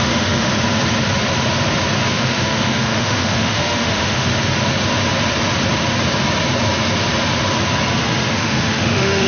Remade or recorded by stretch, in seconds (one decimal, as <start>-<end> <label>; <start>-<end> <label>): 0.0-0.5 remade; 0.5-2.1 recorded; 2.1-4.3 remade; 4.3-8.3 recorded; 8.3-9.3 remade

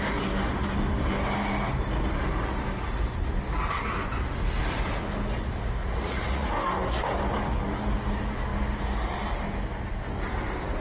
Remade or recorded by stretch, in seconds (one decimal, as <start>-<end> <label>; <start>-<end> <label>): 0.0-5.8 recorded; 5.8-6.5 remade; 6.5-10.8 recorded

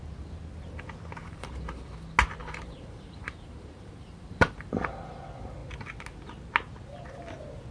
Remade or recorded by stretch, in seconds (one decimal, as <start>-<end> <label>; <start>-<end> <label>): 0.0-1.2 recorded; 1.2-1.9 remade; 1.9-2.4 recorded; 2.4-4.7 remade; 4.7-7.7 recorded

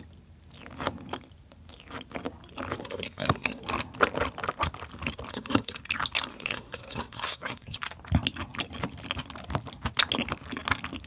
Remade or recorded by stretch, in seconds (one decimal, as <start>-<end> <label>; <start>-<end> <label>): 0.0-2.8 recorded; 2.8-3.6 remade; 3.6-5.3 recorded; 5.3-5.8 remade; 5.8-6.3 recorded; 6.3-7.8 remade; 7.8-11.1 recorded

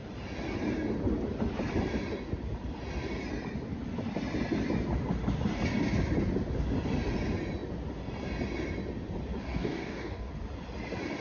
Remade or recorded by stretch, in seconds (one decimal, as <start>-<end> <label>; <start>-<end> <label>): 0.0-9.4 recorded; 9.4-10.3 remade; 10.3-11.2 recorded

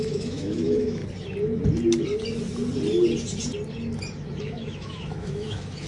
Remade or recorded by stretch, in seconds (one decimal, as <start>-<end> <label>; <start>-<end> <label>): 0.0-1.0 remade; 1.0-4.4 recorded; 4.4-5.9 remade

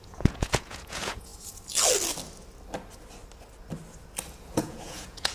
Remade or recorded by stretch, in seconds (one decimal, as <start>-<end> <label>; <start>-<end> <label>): 0.0-1.3 remade; 1.3-4.4 recorded; 4.4-5.3 remade